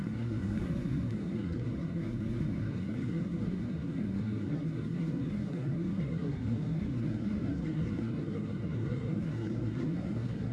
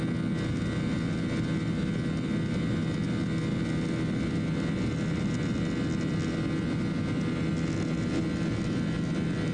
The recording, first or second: second